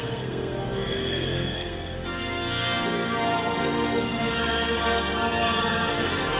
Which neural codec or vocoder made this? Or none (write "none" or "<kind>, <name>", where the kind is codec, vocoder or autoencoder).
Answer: codec, SNAC